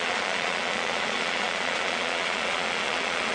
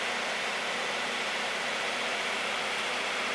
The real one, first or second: second